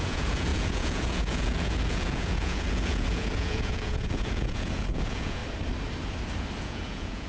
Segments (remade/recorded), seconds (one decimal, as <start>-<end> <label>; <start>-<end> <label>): 0.0-5.4 remade; 5.4-6.6 recorded; 6.6-7.3 remade

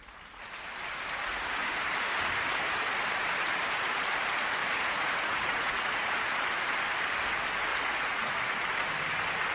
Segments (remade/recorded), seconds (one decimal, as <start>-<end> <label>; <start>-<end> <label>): 0.0-4.6 recorded; 4.6-6.1 remade; 6.1-7.7 recorded; 7.7-8.3 remade; 8.3-9.5 recorded